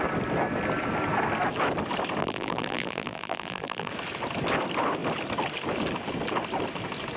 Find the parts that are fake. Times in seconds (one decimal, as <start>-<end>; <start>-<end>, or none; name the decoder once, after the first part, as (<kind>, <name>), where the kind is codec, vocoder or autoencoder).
2.2-3.9 (vocoder, BigVGAN v2)